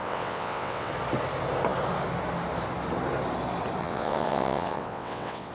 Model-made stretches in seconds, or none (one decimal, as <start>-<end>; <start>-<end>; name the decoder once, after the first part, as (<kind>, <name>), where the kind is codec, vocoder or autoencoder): 0.0-0.9 (vocoder, WaveNeXt); 3.8-5.5